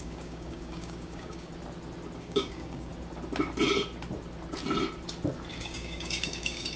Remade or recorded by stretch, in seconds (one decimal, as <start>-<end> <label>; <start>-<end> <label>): 0.0-1.5 remade; 1.5-2.2 recorded; 2.2-2.9 remade; 2.9-5.5 recorded; 5.5-6.8 remade